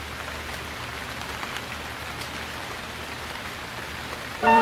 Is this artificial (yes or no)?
yes